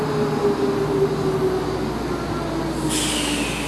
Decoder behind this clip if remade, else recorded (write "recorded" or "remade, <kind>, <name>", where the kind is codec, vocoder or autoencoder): recorded